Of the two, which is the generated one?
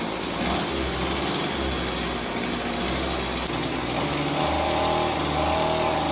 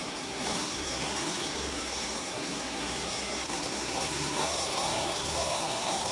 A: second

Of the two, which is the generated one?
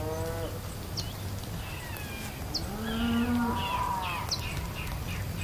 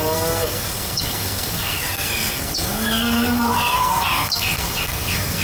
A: second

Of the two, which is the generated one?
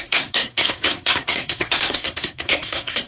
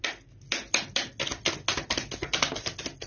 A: first